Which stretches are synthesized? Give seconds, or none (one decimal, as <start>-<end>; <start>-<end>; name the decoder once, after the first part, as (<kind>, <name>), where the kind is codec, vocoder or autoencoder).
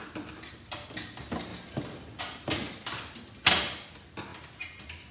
none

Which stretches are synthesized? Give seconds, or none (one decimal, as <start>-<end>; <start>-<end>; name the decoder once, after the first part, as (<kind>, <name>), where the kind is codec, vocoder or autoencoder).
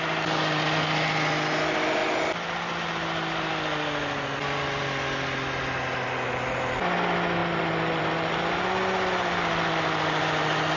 none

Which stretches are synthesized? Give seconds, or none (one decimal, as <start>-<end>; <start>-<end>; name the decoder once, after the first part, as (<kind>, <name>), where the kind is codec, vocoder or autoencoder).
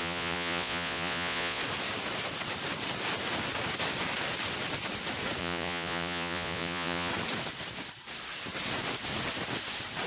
0.0-1.6 (vocoder, Vocos); 5.4-7.1